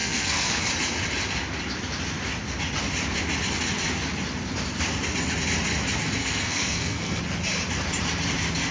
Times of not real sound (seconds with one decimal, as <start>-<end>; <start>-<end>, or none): 0.0-0.7; 6.2-7.2